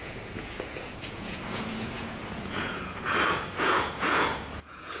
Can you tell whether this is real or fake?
fake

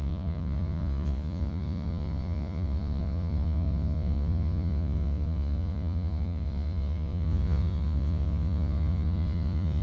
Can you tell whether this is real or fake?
fake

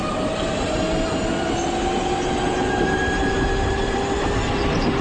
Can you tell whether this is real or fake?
real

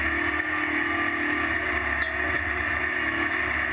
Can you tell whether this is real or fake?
real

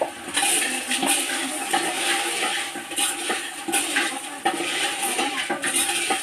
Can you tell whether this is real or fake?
real